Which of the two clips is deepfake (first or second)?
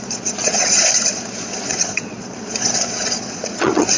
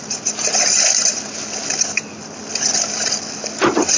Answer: first